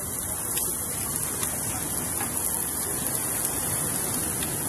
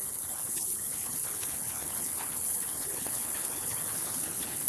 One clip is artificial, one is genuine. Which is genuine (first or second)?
first